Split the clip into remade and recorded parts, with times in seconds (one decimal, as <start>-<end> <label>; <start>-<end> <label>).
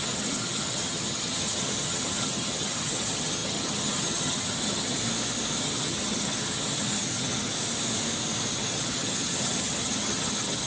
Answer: 0.0-5.0 remade; 5.0-5.6 recorded; 5.6-7.5 remade; 7.5-8.5 recorded; 8.5-10.7 remade